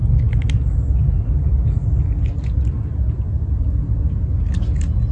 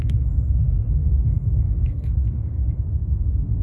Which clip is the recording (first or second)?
first